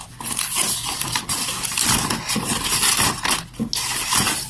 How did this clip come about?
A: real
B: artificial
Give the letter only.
A